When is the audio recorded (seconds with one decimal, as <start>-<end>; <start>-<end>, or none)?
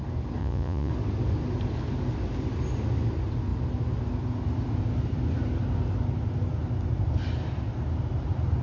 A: 0.0-0.4; 0.9-8.6